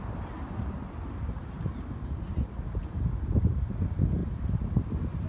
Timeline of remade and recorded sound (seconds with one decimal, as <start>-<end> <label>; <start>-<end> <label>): 0.0-4.2 recorded; 4.2-5.3 remade